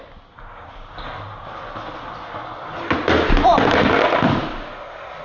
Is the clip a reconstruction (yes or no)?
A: no